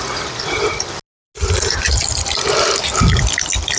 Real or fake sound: real